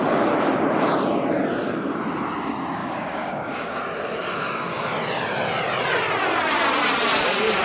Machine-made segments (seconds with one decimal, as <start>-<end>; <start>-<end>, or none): 2.8-3.7